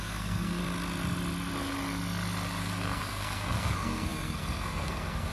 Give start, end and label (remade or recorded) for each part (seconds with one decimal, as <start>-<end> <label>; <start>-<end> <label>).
0.0-0.6 remade; 0.6-2.6 recorded; 2.6-5.3 remade

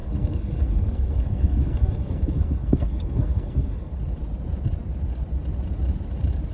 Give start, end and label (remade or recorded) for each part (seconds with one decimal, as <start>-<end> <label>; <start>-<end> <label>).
0.0-3.9 remade; 3.9-6.5 recorded

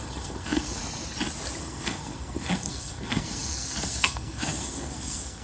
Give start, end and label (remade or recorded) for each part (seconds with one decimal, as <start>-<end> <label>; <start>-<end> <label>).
0.0-0.8 remade; 0.8-1.6 recorded; 1.6-5.4 remade

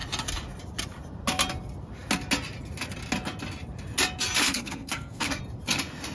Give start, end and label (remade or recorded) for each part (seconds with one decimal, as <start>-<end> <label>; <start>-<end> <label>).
0.0-4.4 recorded; 4.4-5.4 remade; 5.4-6.1 recorded

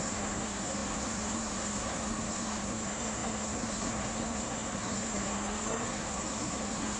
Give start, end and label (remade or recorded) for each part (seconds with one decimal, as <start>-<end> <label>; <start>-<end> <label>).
0.0-7.0 remade

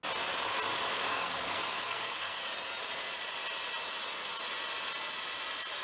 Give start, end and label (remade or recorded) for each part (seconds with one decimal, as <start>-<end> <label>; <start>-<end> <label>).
0.0-0.9 recorded; 0.9-2.4 remade; 2.4-5.8 recorded

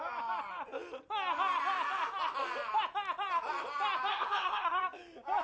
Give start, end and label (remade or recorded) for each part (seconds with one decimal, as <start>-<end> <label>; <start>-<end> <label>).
0.0-4.1 recorded; 4.1-4.8 remade; 4.8-5.4 recorded